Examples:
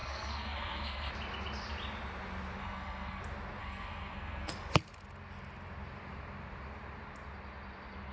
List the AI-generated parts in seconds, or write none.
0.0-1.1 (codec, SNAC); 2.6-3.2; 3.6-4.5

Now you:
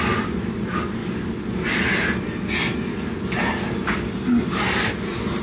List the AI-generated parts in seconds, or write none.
none

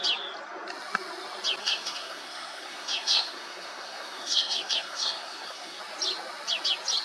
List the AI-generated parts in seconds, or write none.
1.6-5.8 (codec, SNAC)

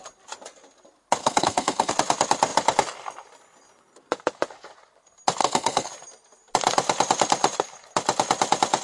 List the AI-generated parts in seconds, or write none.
1.2-1.9 (codec, SNAC); 5.4-5.9

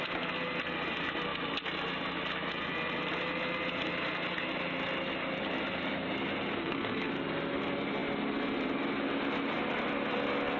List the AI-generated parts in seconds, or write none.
6.6-7.1 (codec, SNAC)

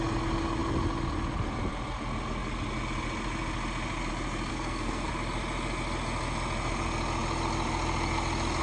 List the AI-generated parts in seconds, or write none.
4.5-5.1 (codec, SNAC)

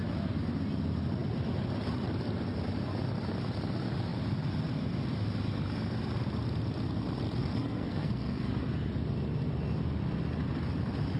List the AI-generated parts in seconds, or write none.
7.4-8.5 (codec, SNAC)

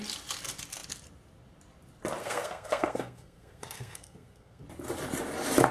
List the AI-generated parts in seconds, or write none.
2.2-4.6 (codec, SNAC)